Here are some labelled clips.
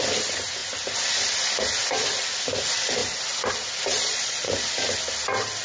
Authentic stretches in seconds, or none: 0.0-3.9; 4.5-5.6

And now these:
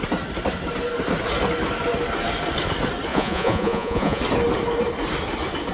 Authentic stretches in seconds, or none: 0.0-3.1; 4.2-5.7